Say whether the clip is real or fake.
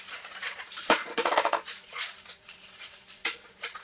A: fake